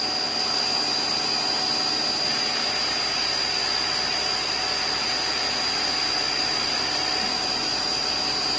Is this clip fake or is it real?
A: real